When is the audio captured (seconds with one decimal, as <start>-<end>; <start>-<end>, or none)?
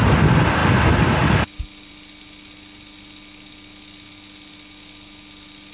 0.0-5.7